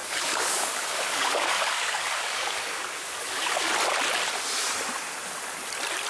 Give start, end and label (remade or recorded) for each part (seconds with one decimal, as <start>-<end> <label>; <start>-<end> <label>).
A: 0.0-3.7 remade; 3.7-6.1 recorded